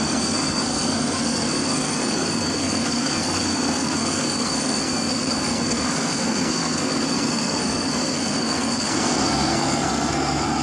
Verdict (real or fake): fake